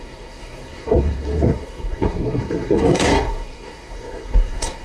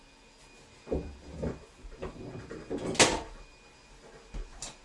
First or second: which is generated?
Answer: first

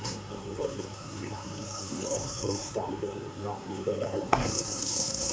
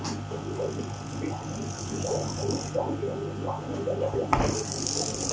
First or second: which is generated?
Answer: first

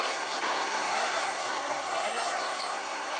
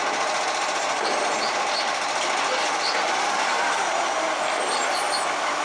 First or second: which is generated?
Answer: first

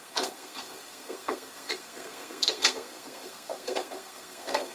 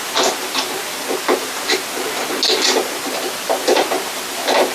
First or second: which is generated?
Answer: first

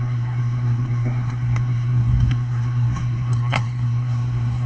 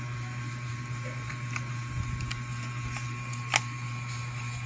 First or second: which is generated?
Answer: first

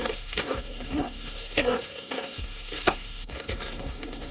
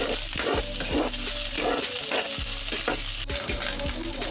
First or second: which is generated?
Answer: first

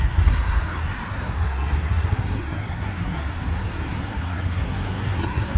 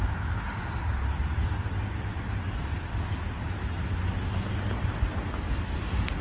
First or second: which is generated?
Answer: first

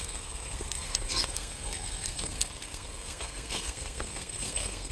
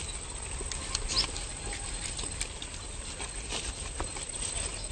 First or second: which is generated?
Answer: first